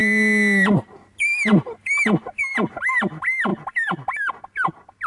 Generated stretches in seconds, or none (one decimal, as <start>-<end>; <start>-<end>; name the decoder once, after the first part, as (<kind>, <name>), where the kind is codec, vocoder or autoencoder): none